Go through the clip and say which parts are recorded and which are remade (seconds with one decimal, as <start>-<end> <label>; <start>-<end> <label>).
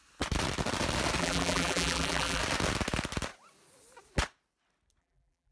0.0-1.2 recorded; 1.2-2.4 remade; 2.4-5.0 recorded; 5.0-5.5 remade